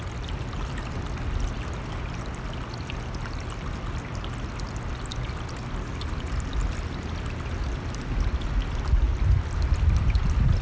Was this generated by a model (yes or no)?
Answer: no